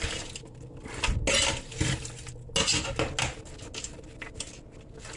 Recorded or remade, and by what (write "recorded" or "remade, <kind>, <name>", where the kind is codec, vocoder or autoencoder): recorded